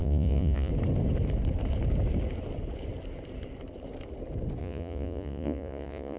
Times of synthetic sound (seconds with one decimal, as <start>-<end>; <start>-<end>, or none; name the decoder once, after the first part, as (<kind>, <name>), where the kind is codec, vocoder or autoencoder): 0.0-0.7 (vocoder, Vocos); 4.6-6.2